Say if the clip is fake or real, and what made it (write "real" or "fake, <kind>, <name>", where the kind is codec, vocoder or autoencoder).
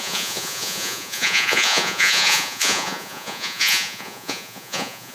fake, vocoder, Vocos